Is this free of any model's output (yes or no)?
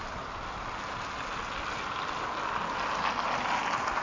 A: yes